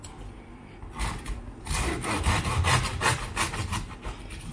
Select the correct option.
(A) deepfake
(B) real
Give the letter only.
B